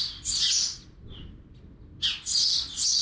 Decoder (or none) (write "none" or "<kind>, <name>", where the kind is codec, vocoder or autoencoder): none